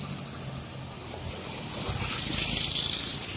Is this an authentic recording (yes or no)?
yes